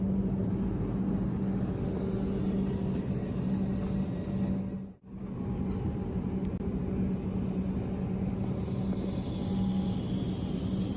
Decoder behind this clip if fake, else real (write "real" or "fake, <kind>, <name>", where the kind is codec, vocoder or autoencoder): real